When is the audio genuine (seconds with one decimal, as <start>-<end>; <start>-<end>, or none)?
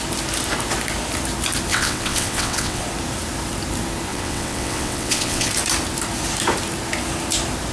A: 0.0-1.7; 2.8-4.1; 5.5-7.7